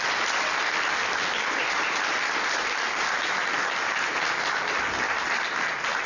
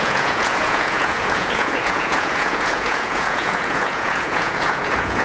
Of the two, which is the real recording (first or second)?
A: first